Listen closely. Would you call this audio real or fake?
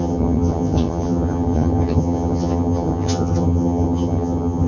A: fake